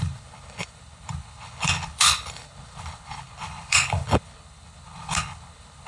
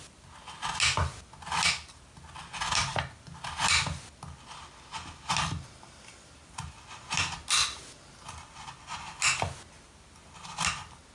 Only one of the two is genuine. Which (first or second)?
second